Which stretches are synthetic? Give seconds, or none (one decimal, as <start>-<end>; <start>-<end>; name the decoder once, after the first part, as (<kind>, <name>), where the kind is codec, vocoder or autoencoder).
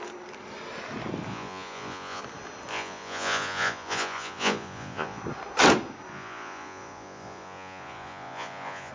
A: 1.3-2.2 (vocoder, Vocos); 2.7-5.2; 6.1-8.9